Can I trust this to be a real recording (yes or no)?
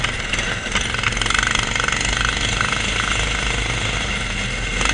yes